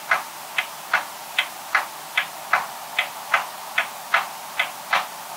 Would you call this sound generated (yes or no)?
no